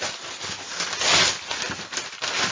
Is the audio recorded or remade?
recorded